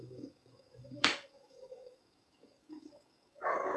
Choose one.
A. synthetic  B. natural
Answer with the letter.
A